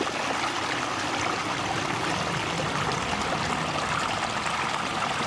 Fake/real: real